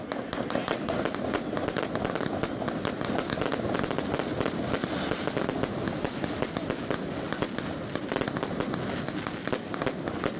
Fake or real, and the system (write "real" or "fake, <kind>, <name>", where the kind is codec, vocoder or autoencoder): real